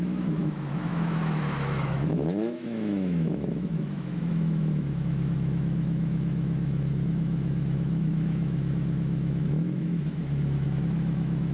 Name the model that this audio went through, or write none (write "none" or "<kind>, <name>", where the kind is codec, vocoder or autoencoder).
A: autoencoder, DAC-VAE